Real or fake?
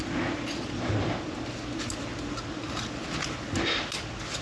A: real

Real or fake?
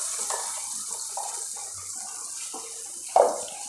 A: real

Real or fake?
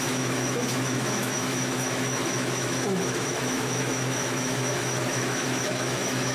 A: fake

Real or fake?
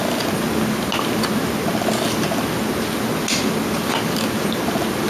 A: real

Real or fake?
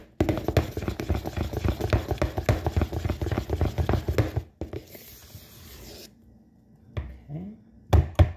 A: real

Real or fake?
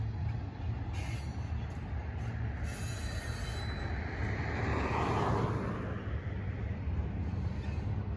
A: real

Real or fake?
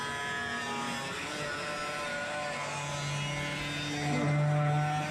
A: real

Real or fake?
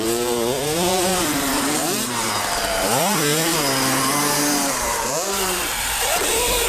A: fake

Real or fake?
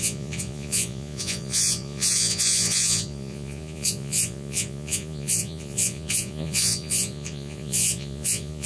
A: fake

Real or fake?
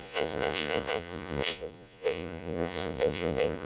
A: fake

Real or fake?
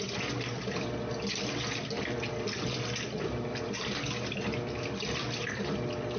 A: real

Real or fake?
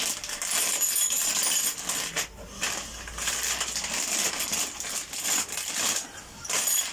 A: real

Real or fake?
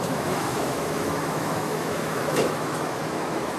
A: fake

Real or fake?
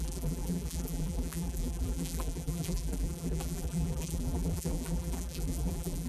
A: fake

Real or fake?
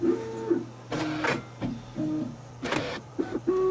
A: real